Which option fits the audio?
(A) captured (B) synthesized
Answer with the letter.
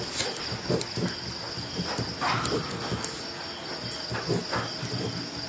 A